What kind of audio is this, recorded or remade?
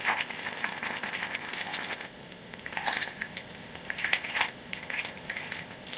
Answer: remade